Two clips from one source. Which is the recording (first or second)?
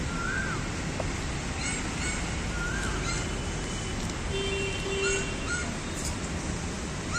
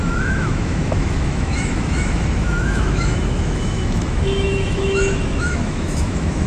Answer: first